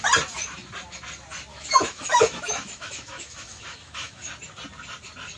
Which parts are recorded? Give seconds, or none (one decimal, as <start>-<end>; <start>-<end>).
0.0-1.5; 4.3-5.4